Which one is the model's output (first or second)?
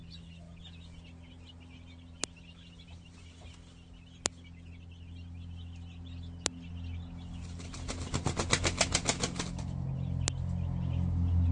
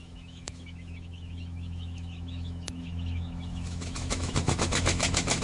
second